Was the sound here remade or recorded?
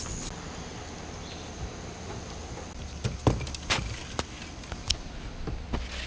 recorded